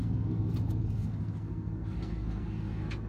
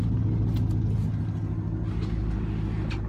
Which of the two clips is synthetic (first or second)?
first